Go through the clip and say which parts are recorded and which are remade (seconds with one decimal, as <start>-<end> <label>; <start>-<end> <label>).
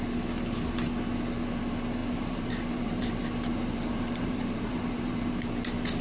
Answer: 0.0-2.0 recorded; 2.0-5.3 remade; 5.3-6.0 recorded